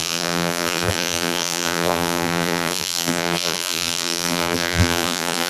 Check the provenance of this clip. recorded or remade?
remade